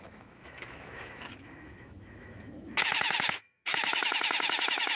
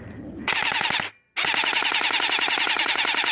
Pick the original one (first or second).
second